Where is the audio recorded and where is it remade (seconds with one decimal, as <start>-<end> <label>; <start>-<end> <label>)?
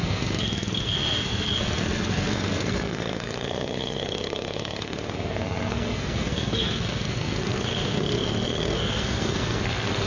0.0-10.1 remade